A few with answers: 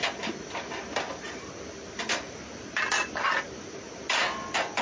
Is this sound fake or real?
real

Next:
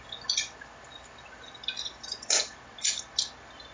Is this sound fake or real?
real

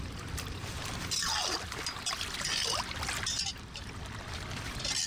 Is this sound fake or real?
real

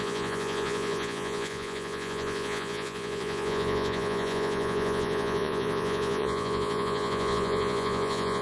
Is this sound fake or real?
fake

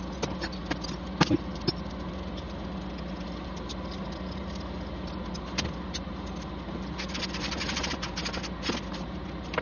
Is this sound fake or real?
real